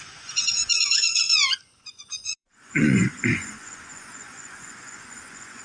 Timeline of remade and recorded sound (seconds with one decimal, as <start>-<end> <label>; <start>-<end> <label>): 0.0-5.6 remade